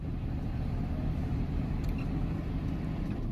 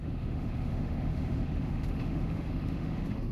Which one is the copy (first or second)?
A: second